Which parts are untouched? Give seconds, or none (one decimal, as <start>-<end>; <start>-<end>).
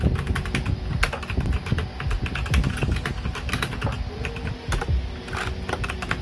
0.0-6.2